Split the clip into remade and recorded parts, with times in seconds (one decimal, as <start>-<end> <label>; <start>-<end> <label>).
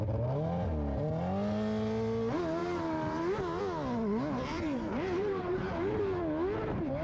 0.0-2.6 recorded; 2.6-3.6 remade; 3.6-4.5 recorded; 4.5-6.0 remade; 6.0-7.0 recorded